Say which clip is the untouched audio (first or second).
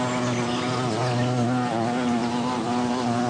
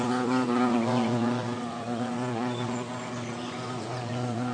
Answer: first